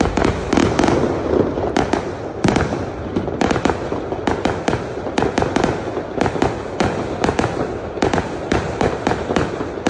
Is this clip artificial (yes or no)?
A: no